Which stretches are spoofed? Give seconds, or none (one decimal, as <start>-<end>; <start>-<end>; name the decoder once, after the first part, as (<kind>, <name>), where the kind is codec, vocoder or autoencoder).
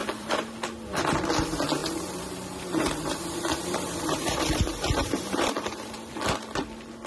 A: 0.0-0.5 (vocoder, BigVGAN v2); 1.8-6.1